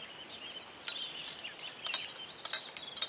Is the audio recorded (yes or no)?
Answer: yes